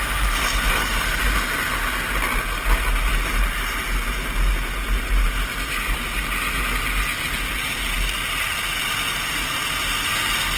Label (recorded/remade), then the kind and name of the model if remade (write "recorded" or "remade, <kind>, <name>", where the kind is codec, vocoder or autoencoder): recorded